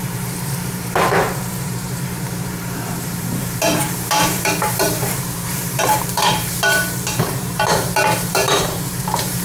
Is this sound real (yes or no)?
no